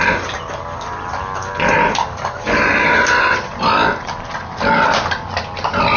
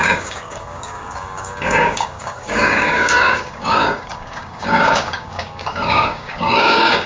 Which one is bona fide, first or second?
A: first